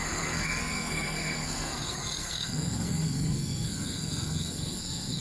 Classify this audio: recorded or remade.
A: remade